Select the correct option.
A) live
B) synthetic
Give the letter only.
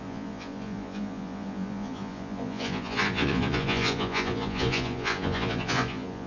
B